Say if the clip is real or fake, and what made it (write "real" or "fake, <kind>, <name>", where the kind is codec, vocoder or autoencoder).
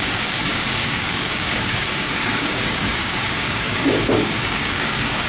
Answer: fake, codec, DAC